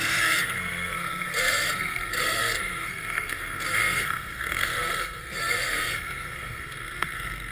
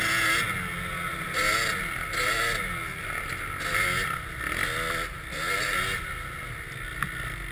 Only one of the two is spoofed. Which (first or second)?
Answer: first